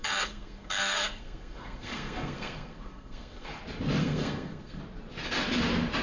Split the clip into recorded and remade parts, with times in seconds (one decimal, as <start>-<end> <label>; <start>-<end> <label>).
0.0-3.6 remade; 3.6-4.0 recorded; 4.0-4.8 remade; 4.8-6.0 recorded